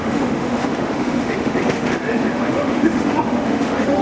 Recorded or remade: remade